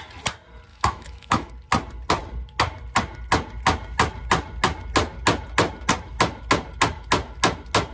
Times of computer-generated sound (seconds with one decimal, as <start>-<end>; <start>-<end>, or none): 0.7-1.5